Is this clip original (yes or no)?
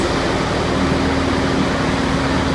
yes